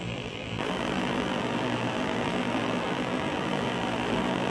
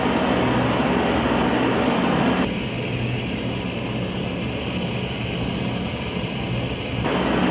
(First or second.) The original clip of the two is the second